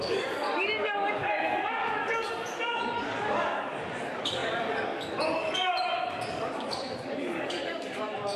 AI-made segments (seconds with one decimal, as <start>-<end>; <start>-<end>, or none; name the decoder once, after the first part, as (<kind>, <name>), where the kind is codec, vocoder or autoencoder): 0.0-8.4 (codec, DAC)